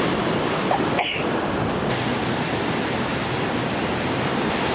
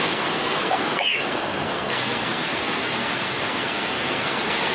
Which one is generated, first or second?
second